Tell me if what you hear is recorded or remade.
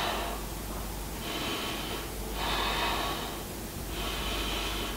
recorded